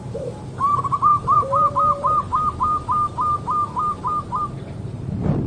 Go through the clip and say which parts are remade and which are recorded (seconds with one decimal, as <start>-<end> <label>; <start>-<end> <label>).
0.0-2.3 remade; 2.3-4.4 recorded; 4.4-5.5 remade